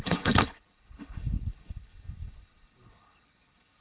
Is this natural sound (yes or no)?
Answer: no